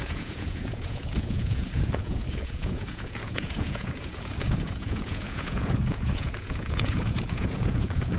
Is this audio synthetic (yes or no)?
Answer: yes